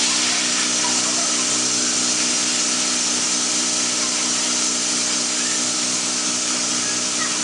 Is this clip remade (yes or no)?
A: no